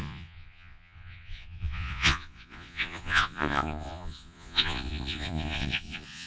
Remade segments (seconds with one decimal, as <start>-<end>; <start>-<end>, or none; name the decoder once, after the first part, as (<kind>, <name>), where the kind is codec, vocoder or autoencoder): 0.0-6.3 (vocoder, Vocos)